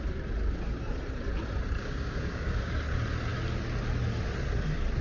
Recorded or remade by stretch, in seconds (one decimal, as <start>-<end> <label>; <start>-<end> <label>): 0.0-1.8 recorded; 1.8-2.7 remade; 2.7-5.0 recorded